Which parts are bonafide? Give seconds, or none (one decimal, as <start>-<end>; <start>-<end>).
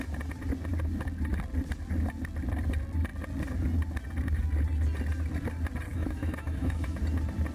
0.0-5.9; 7.0-7.5